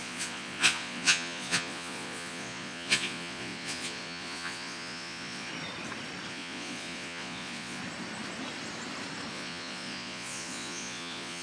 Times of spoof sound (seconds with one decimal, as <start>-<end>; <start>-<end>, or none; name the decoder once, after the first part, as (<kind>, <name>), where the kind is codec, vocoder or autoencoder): 0.0-5.5 (vocoder, Vocos); 6.3-7.8; 9.3-11.4